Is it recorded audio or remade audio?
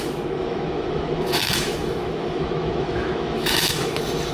remade